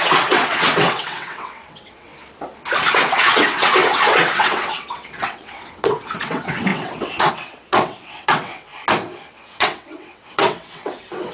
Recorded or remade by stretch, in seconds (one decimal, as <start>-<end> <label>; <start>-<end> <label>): 0.0-2.1 remade; 2.1-2.9 recorded; 2.9-8.7 remade; 8.7-9.4 recorded; 9.4-11.3 remade